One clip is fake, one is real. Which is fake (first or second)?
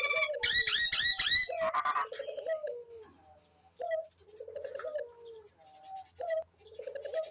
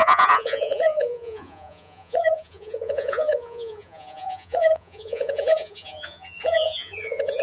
second